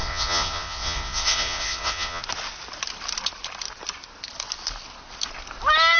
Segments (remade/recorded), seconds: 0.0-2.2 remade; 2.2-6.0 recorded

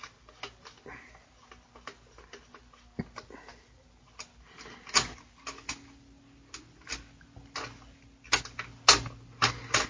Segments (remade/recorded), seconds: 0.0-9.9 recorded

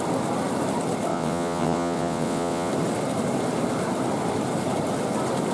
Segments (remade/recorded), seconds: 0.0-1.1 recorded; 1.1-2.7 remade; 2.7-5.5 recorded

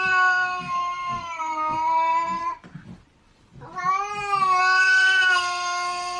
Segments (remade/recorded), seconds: 0.0-2.4 remade; 2.4-4.6 recorded; 4.6-6.2 remade